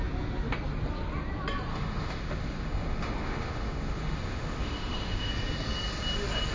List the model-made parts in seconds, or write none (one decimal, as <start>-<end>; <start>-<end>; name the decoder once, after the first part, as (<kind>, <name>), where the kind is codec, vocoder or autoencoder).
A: 1.7-5.3 (autoencoder, DAC-VAE)